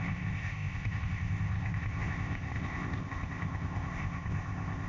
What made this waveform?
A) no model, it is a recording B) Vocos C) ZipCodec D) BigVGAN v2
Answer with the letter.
C